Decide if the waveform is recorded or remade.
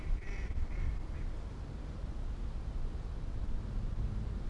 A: recorded